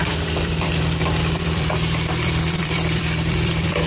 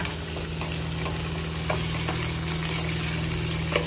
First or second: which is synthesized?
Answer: first